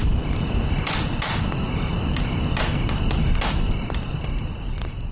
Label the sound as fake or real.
real